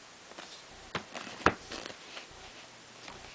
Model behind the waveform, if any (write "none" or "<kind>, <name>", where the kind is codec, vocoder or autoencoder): none